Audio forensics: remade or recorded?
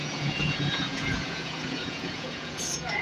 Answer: remade